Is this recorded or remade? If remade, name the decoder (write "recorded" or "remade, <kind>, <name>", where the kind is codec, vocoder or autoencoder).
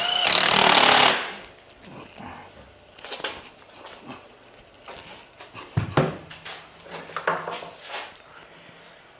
recorded